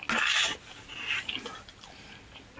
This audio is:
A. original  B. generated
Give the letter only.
A